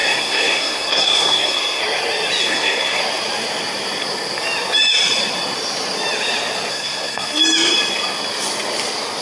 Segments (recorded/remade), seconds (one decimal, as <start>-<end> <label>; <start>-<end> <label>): 0.0-1.8 remade; 1.8-2.4 recorded; 2.4-3.0 remade; 3.0-6.7 recorded; 6.7-7.4 remade; 7.4-9.2 recorded